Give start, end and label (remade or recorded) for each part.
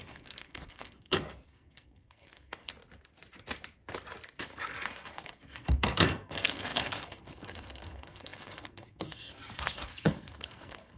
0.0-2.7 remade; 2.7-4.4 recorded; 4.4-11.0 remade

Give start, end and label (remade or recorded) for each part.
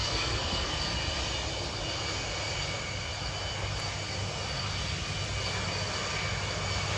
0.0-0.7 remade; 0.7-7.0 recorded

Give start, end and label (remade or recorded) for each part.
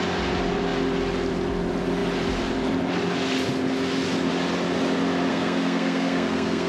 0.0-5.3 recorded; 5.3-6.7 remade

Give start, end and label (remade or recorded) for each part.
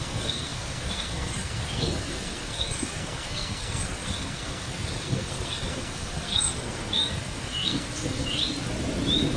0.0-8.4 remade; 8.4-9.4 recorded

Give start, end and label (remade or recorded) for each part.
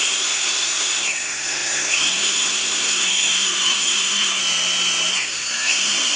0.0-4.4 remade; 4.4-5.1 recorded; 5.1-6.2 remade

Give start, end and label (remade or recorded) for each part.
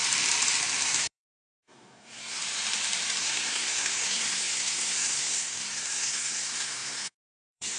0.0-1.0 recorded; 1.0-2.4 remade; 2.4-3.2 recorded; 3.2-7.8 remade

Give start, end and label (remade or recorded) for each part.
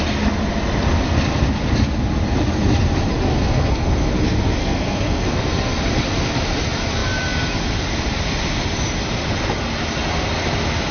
0.0-3.3 recorded; 3.3-4.1 remade; 4.1-4.6 recorded; 4.6-5.4 remade; 5.4-10.9 recorded